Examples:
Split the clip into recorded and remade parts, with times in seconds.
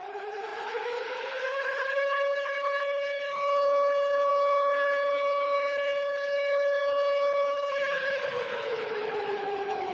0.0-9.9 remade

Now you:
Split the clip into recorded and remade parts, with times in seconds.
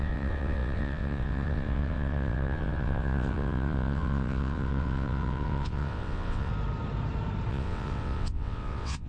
0.0-6.5 remade; 6.5-7.5 recorded; 7.5-9.1 remade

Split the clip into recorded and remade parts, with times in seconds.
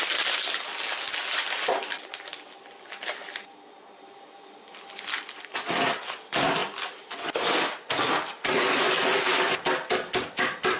0.0-10.8 recorded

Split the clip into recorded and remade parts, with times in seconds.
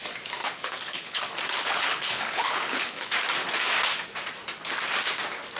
0.0-0.4 recorded; 0.4-1.2 remade; 1.2-1.6 recorded; 1.6-3.1 remade; 3.1-5.6 recorded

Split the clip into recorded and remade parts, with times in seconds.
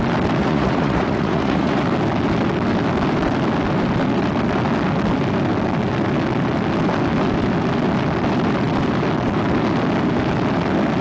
0.0-0.4 recorded; 0.4-1.8 remade; 1.8-11.0 recorded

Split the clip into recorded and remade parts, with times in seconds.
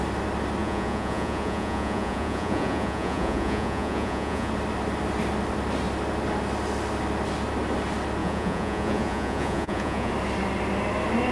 0.0-0.6 recorded; 0.6-4.5 remade; 4.5-8.2 recorded; 8.2-10.1 remade; 10.1-11.3 recorded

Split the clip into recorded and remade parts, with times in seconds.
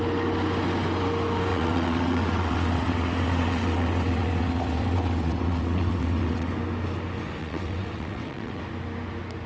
0.0-1.5 recorded; 1.5-6.5 remade; 6.5-7.4 recorded; 7.4-8.6 remade; 8.6-9.5 recorded